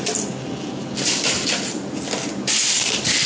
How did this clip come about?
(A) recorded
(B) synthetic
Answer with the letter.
A